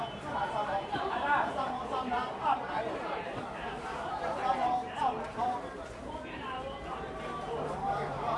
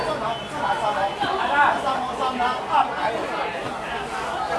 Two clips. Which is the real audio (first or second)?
second